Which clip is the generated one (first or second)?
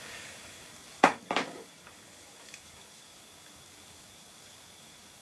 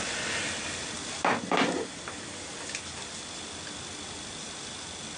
first